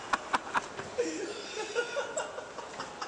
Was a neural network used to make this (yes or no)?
no